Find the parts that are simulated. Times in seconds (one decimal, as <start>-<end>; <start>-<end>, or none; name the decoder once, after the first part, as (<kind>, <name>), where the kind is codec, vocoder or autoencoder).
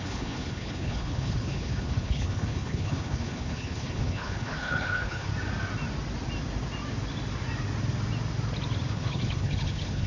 0.0-5.3 (codec, HILCodec); 8.9-10.1